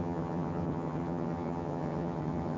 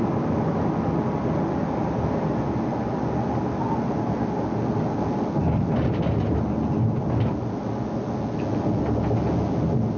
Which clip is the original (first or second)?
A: second